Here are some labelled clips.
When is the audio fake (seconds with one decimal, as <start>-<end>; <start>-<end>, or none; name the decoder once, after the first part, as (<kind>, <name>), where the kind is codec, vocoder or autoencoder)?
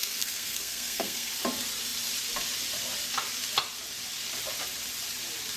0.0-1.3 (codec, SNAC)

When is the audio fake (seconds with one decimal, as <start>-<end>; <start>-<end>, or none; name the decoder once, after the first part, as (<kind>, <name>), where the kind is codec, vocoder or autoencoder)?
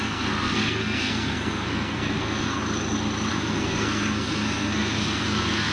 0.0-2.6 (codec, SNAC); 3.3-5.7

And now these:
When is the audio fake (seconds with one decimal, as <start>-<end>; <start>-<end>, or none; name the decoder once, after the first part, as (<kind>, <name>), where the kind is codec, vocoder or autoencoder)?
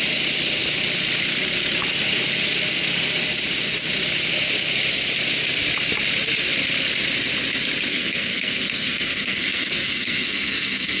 7.9-11.0 (codec, SNAC)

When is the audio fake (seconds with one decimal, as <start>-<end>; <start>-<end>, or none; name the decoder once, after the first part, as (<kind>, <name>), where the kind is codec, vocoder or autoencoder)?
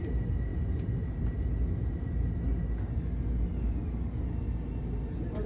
none